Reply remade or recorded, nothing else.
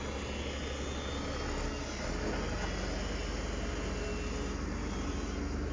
recorded